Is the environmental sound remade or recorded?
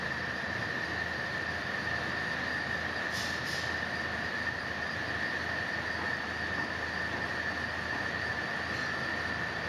recorded